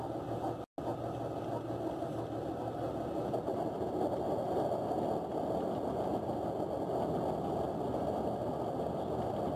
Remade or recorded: recorded